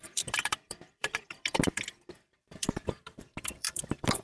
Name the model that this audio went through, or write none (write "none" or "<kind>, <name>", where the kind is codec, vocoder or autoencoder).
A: vocoder, BigVGAN v2